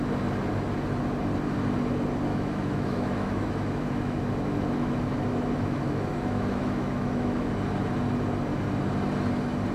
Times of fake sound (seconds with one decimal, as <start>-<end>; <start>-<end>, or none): 2.3-7.5